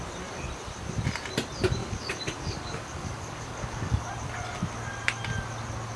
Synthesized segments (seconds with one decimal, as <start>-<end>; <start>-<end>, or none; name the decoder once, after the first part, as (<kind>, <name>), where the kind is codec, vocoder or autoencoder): 1.8-4.1 (codec, DAC)